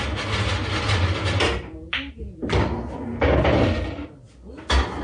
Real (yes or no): yes